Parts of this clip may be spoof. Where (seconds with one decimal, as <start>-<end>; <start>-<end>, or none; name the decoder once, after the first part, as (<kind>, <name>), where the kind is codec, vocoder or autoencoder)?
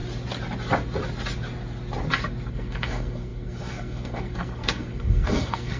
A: 2.5-5.8 (codec, SNAC)